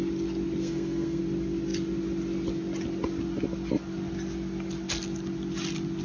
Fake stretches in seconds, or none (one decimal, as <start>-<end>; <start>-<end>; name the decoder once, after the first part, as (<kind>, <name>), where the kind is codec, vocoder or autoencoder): 0.6-1.2 (codec, SNAC)